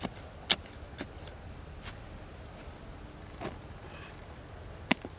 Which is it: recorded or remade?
recorded